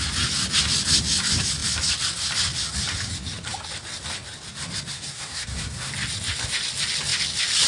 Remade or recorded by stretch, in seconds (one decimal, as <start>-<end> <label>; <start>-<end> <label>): 0.0-4.9 recorded; 4.9-5.9 remade; 5.9-7.7 recorded